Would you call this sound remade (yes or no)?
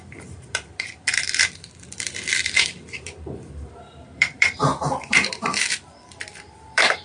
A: yes